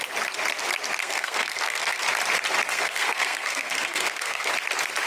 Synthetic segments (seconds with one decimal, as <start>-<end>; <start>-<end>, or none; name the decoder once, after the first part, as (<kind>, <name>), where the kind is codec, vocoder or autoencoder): 1.0-2.0 (codec, SNAC); 2.7-4.5